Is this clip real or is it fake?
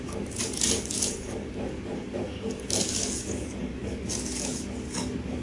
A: fake